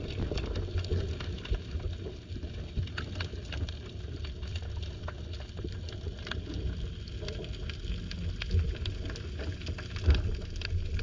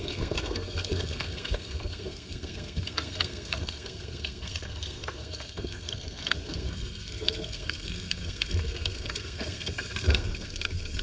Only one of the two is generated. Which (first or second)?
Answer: second